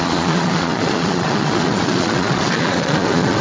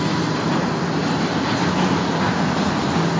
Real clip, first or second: second